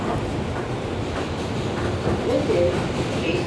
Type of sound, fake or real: real